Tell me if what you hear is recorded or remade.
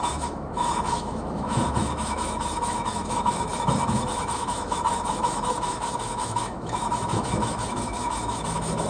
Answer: remade